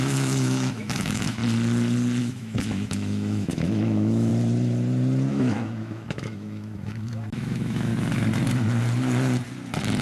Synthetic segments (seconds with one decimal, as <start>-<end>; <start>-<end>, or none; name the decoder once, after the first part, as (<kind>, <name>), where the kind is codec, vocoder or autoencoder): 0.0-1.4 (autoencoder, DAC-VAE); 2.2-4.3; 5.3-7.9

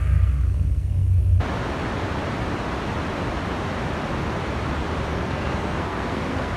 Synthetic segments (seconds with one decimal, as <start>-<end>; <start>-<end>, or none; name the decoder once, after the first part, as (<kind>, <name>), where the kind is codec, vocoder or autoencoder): 0.0-1.2 (codec, SNAC); 5.1-6.6

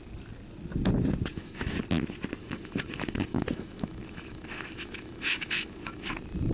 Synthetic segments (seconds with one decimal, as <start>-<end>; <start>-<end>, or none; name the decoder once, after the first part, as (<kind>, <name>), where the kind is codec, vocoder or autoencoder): 1.3-1.8 (autoencoder, DAC-VAE); 2.4-6.1

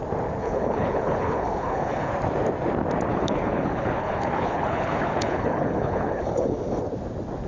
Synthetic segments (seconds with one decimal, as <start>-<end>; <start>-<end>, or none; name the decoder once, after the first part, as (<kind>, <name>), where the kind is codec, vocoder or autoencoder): 0.4-2.1 (codec, HILCodec); 3.1-6.8

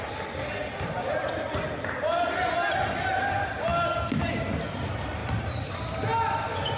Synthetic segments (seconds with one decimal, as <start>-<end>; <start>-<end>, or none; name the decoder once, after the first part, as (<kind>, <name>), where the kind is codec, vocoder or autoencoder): none

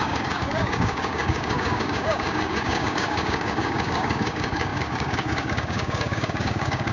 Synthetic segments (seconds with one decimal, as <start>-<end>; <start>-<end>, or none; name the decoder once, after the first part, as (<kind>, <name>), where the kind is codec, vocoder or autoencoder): 0.0-6.9 (codec, DAC)

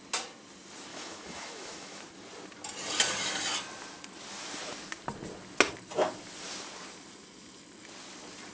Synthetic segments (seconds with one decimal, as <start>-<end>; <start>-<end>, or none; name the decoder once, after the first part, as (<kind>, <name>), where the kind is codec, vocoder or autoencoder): 0.9-2.0 (autoencoder, DAC-VAE)